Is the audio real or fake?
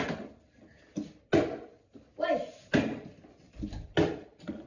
real